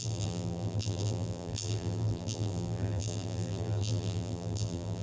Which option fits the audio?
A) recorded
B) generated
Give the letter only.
B